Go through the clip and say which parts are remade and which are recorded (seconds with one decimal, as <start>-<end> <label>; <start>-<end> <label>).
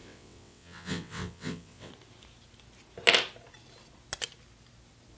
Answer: 0.0-1.9 remade; 1.9-5.2 recorded